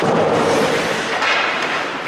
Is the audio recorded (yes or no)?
no